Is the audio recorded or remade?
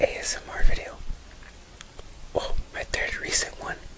recorded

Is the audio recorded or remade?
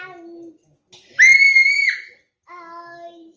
recorded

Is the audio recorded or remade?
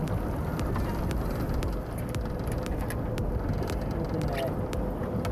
recorded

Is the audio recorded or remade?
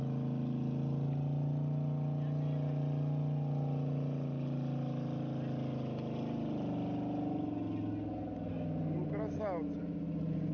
recorded